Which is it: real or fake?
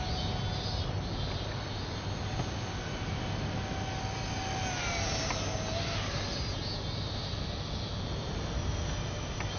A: real